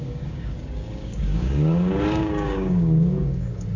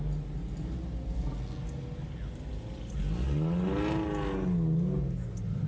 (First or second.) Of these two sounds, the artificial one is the first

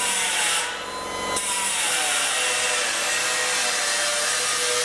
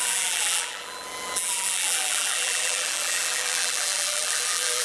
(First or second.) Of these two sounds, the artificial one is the second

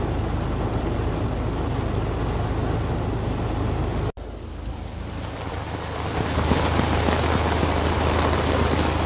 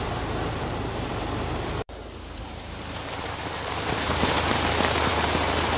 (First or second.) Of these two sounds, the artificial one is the second